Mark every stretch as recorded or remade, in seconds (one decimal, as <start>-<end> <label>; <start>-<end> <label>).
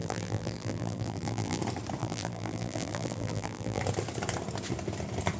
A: 0.0-1.6 remade; 1.6-2.0 recorded; 2.0-3.8 remade; 3.8-5.4 recorded